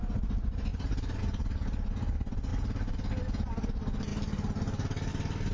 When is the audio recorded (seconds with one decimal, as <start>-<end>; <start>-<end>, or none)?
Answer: 0.0-0.7; 1.2-2.5; 3.1-4.1; 5.1-5.5